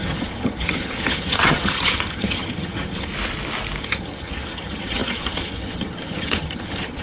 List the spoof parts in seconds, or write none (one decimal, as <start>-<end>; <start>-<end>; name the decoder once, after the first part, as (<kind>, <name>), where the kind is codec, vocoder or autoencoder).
0.0-3.1 (vocoder, HiFi-GAN); 3.8-7.0